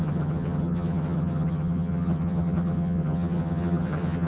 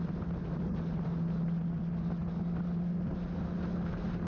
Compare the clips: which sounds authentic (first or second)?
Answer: second